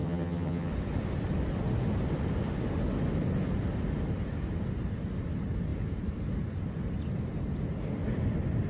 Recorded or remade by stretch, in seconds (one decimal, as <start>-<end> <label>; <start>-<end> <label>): 0.0-0.7 remade; 0.7-8.7 recorded